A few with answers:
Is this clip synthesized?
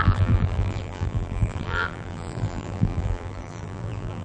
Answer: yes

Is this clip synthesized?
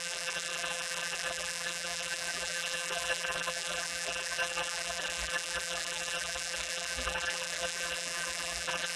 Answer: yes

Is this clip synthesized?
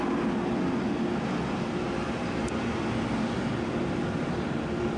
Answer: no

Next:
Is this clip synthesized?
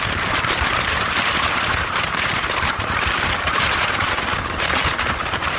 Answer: yes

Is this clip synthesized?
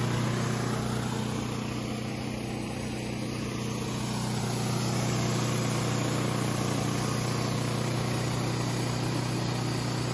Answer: no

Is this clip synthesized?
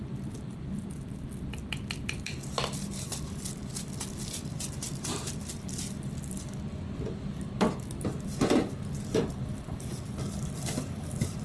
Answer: yes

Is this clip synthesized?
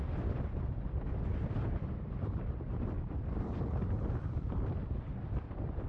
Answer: yes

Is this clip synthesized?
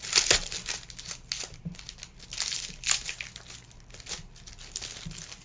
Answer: no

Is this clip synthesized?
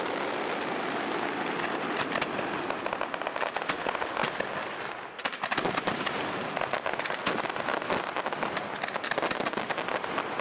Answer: no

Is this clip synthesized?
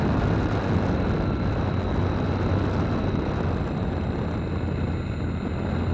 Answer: no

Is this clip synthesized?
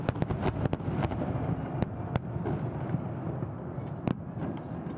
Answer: no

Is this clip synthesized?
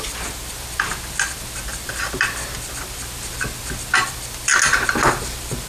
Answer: no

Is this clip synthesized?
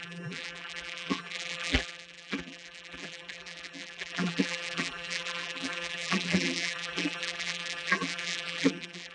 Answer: yes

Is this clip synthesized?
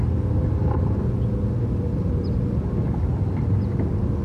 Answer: no